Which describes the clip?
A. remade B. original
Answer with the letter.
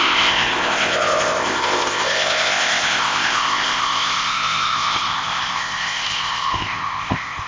A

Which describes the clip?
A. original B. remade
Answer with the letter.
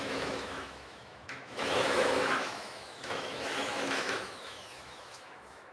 B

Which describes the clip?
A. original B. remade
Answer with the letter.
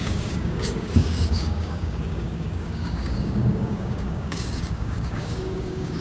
B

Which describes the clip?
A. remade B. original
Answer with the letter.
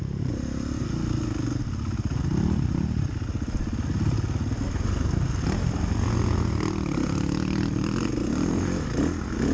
B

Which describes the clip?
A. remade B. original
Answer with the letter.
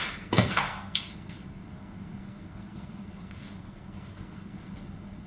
A